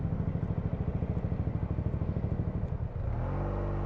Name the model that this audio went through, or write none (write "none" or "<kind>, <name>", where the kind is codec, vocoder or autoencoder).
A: none